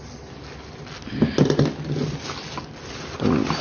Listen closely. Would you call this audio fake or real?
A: real